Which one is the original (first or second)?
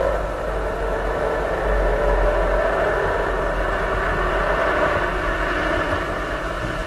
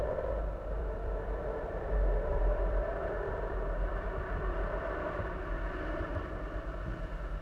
first